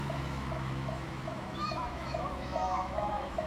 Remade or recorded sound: remade